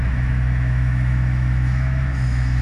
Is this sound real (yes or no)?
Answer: no